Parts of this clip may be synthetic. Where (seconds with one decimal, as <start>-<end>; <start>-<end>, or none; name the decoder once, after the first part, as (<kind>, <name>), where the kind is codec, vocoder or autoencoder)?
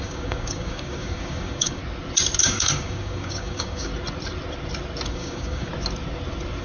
0.0-1.8 (codec, DAC); 2.4-3.9; 5.1-5.7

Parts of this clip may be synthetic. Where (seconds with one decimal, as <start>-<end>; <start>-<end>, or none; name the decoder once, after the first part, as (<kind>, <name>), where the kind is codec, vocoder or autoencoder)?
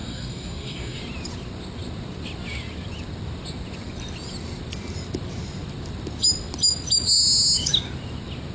0.0-1.0 (codec, DAC)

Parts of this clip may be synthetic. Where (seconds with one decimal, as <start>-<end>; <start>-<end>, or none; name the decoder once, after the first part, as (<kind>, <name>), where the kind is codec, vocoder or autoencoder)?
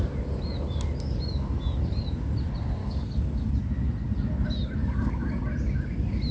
2.8-3.5 (codec, DAC); 4.8-5.4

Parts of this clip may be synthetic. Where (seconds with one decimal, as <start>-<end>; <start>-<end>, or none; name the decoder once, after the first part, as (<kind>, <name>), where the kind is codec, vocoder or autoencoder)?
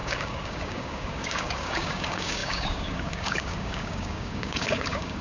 0.0-5.2 (codec, DAC)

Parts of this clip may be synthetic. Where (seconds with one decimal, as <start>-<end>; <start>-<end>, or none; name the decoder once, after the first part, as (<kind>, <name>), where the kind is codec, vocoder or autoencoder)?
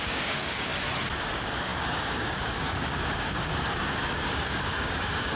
0.0-0.7 (codec, DAC); 1.2-5.4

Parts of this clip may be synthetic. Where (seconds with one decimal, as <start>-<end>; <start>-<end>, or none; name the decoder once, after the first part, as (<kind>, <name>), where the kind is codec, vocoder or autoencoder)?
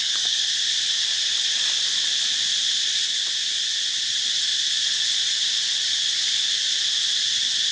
0.0-0.5 (codec, DAC)